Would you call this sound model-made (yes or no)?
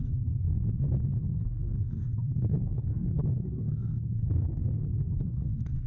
yes